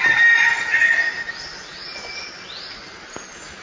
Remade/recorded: recorded